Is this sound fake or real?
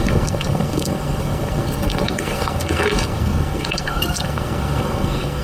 fake